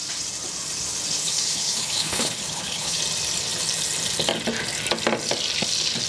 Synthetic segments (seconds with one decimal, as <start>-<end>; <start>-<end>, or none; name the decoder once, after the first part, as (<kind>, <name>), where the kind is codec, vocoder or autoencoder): 1.2-3.0 (codec, HILCodec)